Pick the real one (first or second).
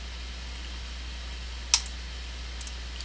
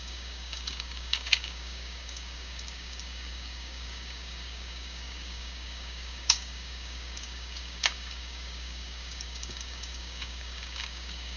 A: first